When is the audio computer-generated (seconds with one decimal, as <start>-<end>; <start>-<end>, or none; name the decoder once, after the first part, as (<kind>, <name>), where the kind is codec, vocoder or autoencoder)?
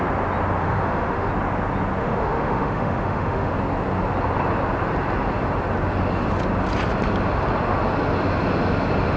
0.6-1.3 (autoencoder, DAC-VAE); 2.0-3.5